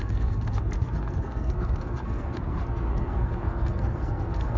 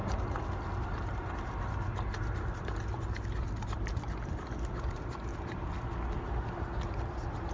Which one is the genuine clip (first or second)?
second